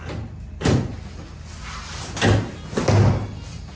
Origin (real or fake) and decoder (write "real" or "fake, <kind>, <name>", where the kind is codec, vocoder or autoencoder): real